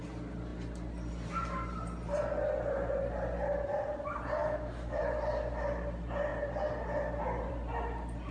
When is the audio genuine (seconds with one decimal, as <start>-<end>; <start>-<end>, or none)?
0.0-4.4; 5.0-8.3